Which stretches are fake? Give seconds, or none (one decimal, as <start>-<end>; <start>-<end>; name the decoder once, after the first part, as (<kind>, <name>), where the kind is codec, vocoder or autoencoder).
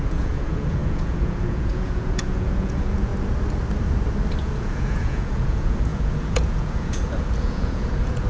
0.0-3.1 (vocoder, Vocos); 4.4-8.3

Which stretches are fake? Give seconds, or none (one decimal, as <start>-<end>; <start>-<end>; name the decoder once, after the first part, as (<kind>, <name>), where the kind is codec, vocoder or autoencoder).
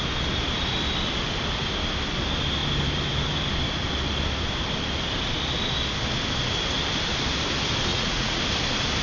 7.9-8.4 (vocoder, Vocos)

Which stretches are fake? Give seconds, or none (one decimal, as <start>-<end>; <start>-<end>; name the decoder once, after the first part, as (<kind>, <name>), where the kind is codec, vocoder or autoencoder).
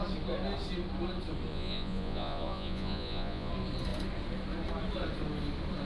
1.5-3.5 (vocoder, Vocos)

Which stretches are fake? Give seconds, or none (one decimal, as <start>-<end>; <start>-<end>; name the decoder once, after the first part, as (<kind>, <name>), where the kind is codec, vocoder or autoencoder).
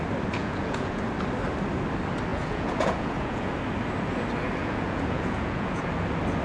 0.4-1.0 (vocoder, Vocos); 2.3-3.5; 4.6-5.9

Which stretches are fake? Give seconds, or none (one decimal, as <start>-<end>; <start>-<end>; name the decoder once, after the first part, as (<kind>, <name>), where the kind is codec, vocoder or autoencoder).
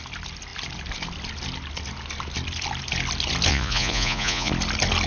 3.5-4.5 (vocoder, Vocos)